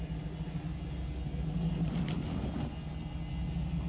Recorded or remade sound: recorded